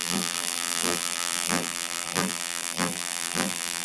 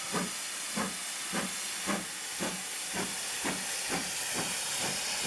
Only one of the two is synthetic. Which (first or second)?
first